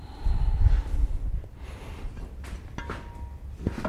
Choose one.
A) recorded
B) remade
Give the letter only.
A